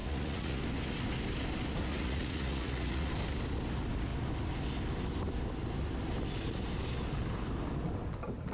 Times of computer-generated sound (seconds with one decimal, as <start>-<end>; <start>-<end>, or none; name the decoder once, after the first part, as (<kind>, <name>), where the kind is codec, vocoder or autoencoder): 0.0-0.6 (vocoder, Vocos); 1.9-3.1